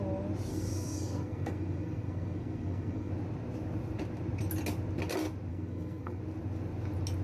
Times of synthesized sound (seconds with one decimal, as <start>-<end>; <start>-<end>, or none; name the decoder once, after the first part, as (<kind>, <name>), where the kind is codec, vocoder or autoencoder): 0.5-3.1 (codec, SNAC); 5.5-6.2